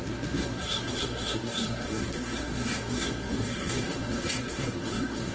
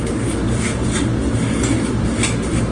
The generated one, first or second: first